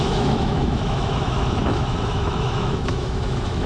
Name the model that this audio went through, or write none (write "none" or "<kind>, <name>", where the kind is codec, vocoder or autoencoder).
autoencoder, DAC-VAE